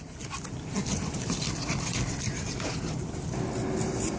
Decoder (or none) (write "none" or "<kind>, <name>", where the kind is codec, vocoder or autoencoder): none